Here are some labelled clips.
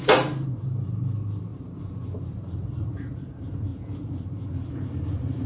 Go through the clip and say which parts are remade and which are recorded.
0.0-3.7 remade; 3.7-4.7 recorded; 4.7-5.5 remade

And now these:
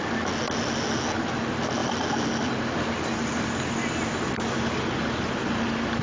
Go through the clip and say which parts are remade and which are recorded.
0.0-6.0 recorded

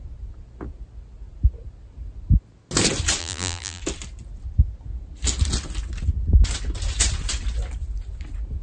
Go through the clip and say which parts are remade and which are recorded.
0.0-3.2 recorded; 3.2-3.8 remade; 3.8-8.6 recorded

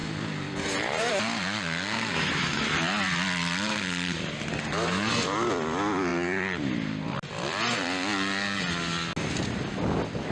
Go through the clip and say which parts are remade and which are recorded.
0.0-10.3 recorded

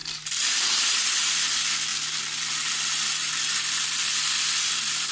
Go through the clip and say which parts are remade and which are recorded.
0.0-0.7 remade; 0.7-5.1 recorded

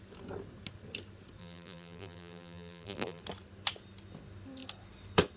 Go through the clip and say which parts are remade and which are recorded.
0.0-1.4 recorded; 1.4-3.2 remade; 3.2-5.4 recorded

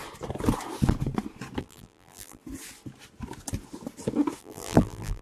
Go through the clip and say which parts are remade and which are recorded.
0.0-1.6 recorded; 1.6-2.4 remade; 2.4-4.4 recorded; 4.4-5.2 remade

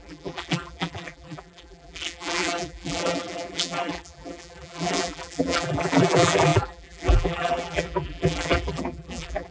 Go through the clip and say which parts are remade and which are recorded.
0.0-9.5 remade